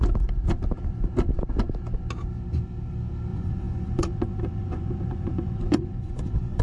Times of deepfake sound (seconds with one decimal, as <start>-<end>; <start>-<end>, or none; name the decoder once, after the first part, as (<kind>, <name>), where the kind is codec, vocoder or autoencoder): 3.3-6.6 (vocoder, Vocos)